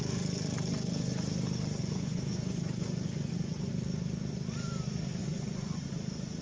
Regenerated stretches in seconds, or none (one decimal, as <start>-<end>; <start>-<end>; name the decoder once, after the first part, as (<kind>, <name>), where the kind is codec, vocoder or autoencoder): 1.8-3.7 (vocoder, Vocos); 5.2-5.9

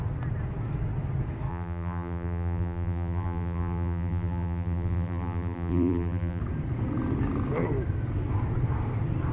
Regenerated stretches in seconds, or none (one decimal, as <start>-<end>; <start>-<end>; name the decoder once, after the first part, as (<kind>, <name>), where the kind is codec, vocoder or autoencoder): 1.5-6.4 (vocoder, BigVGAN v2)